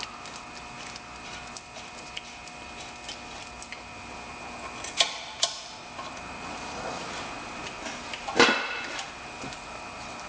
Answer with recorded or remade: recorded